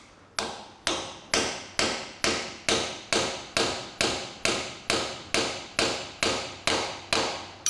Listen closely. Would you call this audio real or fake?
real